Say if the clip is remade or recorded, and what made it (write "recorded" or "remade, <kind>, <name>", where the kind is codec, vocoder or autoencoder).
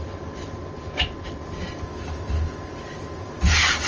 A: recorded